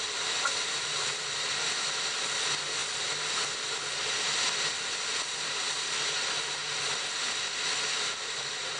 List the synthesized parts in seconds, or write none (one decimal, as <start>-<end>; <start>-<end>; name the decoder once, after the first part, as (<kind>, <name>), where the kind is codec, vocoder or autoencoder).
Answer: none